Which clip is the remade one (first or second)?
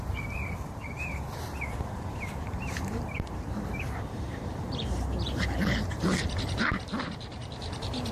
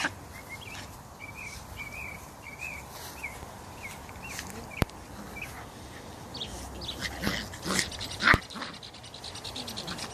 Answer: first